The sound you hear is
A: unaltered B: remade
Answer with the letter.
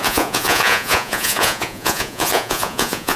B